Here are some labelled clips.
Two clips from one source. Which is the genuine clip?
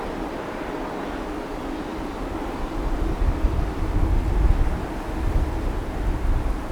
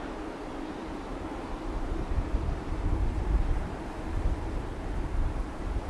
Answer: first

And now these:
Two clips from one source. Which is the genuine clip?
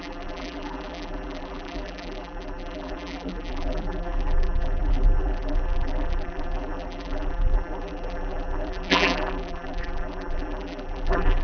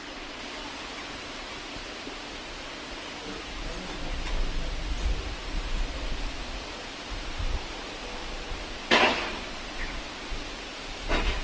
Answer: second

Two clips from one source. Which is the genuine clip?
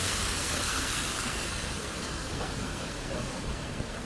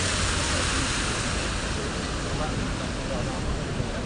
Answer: second